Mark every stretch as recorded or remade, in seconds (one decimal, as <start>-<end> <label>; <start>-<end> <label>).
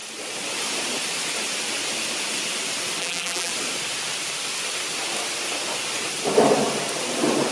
0.0-3.0 recorded; 3.0-3.5 remade; 3.5-7.5 recorded